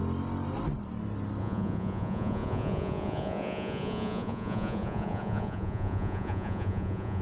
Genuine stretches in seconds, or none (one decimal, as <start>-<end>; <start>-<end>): 0.0-1.4